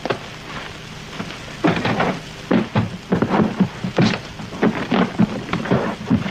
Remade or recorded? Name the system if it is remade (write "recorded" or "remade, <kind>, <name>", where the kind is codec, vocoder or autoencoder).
recorded